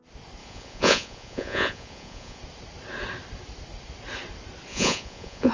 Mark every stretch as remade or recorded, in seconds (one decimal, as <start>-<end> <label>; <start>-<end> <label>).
0.0-0.4 recorded; 0.4-2.4 remade; 2.4-4.7 recorded; 4.7-5.5 remade